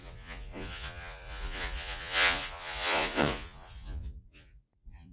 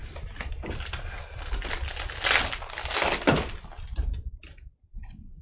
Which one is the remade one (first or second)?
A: first